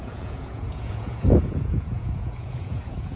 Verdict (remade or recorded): remade